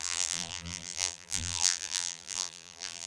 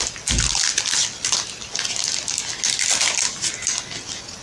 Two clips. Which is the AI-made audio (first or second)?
first